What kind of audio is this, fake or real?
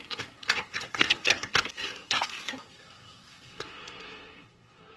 fake